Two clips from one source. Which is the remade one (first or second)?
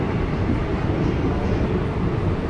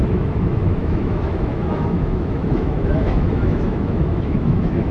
second